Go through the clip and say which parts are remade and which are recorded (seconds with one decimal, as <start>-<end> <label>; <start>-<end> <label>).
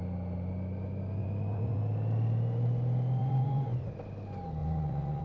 0.0-1.2 recorded; 1.2-1.8 remade; 1.8-3.2 recorded; 3.2-3.9 remade; 3.9-4.6 recorded; 4.6-5.2 remade